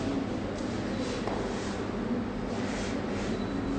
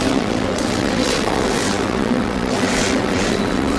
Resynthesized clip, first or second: second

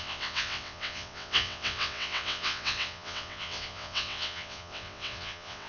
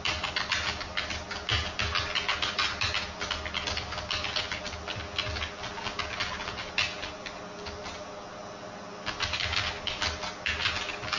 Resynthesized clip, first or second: first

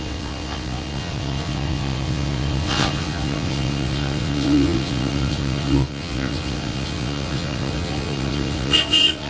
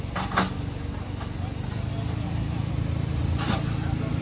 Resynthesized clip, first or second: first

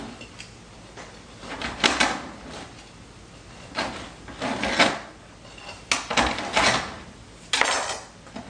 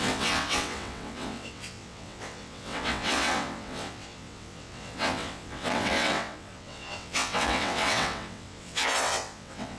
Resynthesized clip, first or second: second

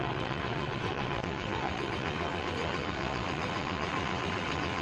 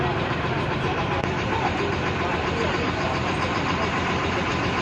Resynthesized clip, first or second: first